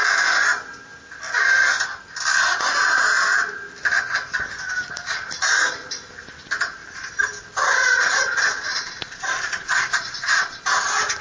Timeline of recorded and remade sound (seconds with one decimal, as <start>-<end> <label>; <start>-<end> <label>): 0.0-2.5 recorded; 2.5-3.1 remade; 3.1-8.7 recorded; 8.7-10.6 remade; 10.6-11.2 recorded